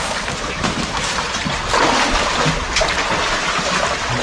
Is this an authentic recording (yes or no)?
yes